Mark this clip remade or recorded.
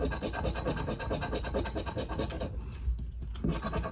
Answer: recorded